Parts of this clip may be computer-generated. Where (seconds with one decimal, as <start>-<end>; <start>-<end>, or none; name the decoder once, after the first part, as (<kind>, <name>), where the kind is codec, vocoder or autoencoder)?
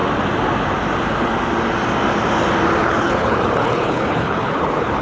2.8-5.0 (codec, HILCodec)